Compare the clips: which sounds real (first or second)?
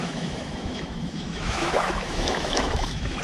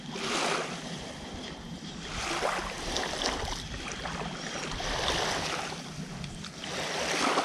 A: second